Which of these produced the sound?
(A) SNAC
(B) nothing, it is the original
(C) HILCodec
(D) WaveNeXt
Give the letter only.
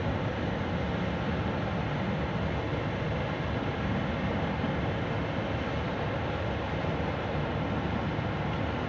B